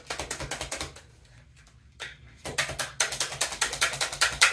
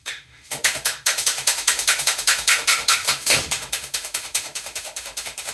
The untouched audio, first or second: first